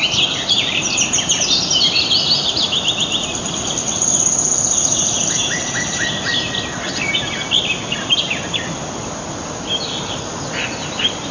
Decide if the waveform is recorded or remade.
recorded